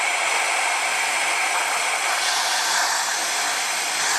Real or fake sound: real